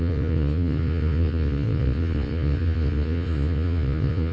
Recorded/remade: remade